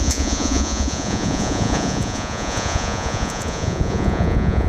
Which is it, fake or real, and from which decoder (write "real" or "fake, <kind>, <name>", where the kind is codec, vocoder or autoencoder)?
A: fake, vocoder, Vocos